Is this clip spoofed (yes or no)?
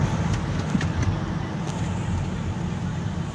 no